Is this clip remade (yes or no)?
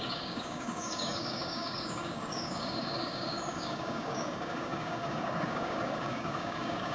yes